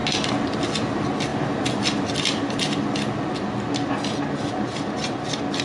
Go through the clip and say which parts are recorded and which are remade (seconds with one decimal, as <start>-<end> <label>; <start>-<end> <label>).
0.0-5.6 recorded